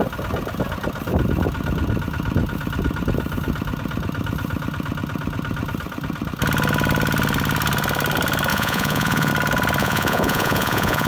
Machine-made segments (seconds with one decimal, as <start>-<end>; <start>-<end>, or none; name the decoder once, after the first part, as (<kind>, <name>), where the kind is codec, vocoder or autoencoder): 8.5-9.3 (vocoder, Vocos); 9.8-11.1